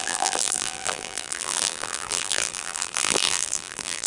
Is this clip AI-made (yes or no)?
yes